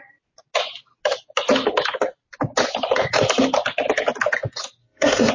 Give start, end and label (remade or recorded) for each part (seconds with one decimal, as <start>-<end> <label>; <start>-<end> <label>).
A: 0.0-4.8 recorded; 4.8-5.3 remade